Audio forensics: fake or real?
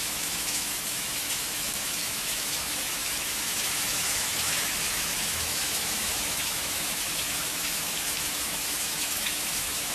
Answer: fake